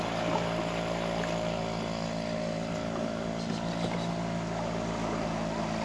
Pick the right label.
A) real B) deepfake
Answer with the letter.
A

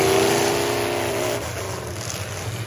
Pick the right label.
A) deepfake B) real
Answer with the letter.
B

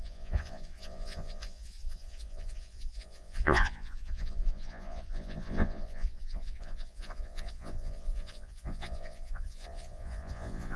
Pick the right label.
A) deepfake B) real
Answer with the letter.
A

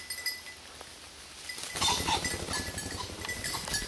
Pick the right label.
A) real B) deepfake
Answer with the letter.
A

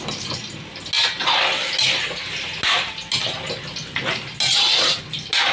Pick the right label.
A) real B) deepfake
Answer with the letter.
A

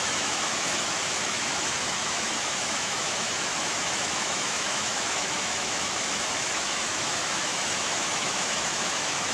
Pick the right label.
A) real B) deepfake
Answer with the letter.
B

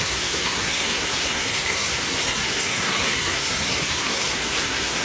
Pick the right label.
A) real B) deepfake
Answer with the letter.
B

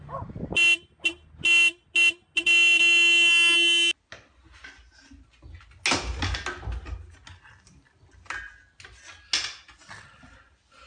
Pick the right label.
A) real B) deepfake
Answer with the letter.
A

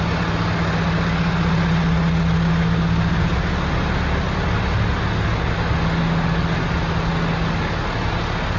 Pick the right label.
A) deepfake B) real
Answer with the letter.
B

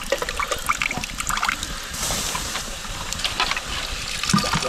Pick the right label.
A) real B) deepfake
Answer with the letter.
A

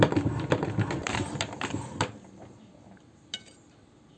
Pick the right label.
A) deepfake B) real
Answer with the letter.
B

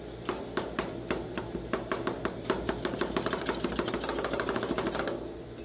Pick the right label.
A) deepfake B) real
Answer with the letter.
B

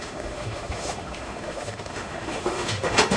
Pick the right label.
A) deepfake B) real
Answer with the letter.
A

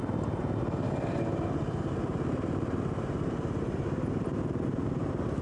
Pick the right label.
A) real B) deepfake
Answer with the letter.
B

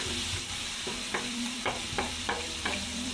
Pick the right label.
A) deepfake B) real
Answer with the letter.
A